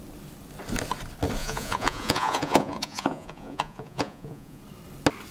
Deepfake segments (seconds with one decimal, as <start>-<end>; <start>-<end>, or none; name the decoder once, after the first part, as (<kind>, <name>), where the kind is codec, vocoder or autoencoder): 1.4-4.6 (vocoder, Vocos)